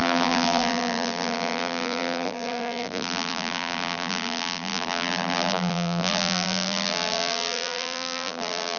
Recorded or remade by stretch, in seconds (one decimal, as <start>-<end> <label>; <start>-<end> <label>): 0.0-8.8 remade